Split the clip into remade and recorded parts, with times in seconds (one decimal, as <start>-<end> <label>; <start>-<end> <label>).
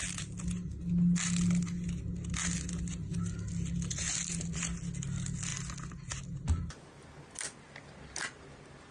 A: 0.0-8.9 recorded